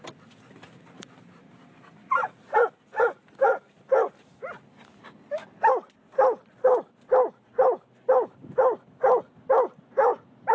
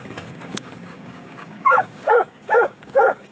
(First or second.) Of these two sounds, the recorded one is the first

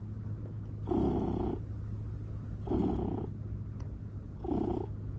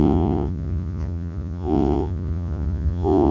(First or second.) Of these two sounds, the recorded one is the first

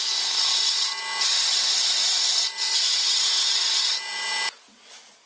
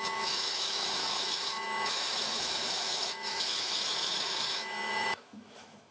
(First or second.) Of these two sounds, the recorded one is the first